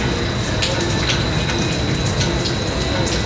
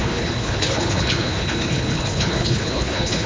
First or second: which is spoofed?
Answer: second